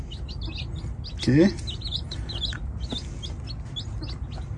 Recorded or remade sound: recorded